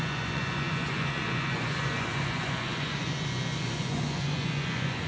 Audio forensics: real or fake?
fake